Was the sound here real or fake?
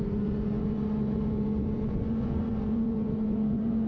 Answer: fake